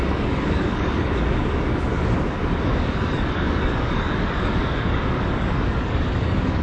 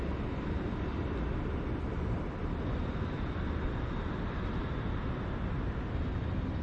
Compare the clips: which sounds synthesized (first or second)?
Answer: first